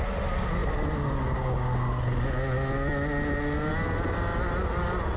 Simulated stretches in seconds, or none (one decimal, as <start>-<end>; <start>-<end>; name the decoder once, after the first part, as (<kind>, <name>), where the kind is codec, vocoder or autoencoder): none